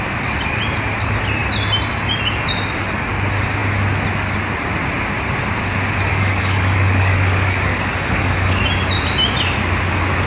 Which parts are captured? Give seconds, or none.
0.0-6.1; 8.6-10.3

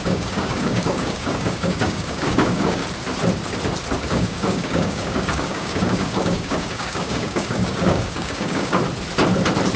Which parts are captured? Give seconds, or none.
2.8-4.1; 8.8-9.8

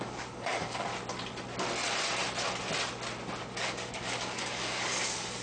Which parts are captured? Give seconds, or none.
0.9-3.4

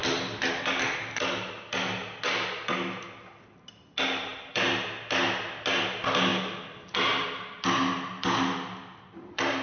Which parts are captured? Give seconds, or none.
0.0-9.6